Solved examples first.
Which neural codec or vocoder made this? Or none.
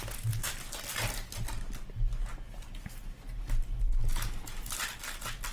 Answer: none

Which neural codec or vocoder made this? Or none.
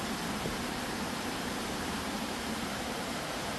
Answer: vocoder, BigVGAN v2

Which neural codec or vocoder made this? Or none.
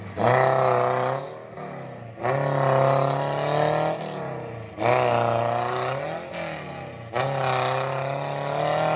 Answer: none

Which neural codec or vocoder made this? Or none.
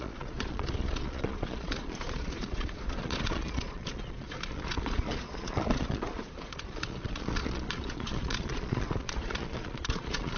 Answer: vocoder, Vocos